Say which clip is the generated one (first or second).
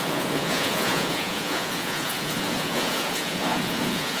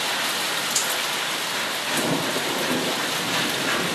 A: first